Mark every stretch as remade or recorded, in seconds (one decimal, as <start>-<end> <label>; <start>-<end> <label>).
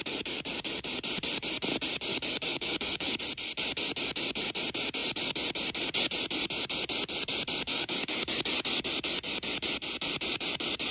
0.0-2.1 recorded; 2.1-3.2 remade; 3.2-7.7 recorded; 7.7-8.3 remade; 8.3-10.9 recorded